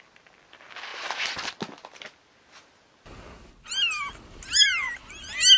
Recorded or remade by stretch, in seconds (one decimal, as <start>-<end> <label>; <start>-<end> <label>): 0.0-5.6 recorded